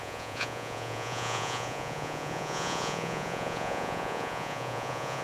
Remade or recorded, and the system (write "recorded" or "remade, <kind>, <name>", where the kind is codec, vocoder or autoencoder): remade, vocoder, Vocos